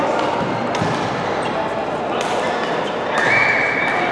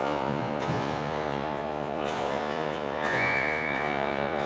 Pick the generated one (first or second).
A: second